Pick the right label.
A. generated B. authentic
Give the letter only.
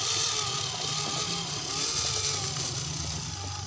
B